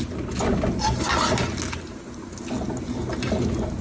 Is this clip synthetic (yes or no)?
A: no